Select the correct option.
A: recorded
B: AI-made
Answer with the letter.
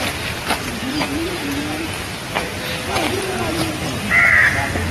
A